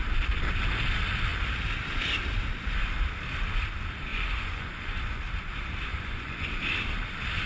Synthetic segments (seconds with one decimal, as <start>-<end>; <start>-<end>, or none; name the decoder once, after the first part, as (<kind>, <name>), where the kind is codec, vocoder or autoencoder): 4.1-5.2 (vocoder, Vocos); 5.9-6.5